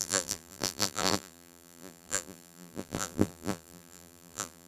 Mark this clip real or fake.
fake